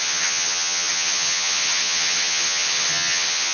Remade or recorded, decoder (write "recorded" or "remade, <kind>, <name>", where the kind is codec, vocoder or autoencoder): remade, vocoder, HiFi-GAN